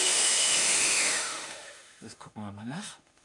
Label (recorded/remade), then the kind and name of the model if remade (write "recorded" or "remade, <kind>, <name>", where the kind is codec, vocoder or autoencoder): remade, autoencoder, DAC-VAE